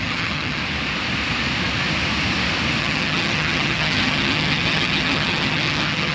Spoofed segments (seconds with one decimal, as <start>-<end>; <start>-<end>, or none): 0.0-0.6; 2.8-6.1